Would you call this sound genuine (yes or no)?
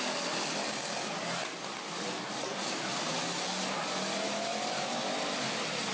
yes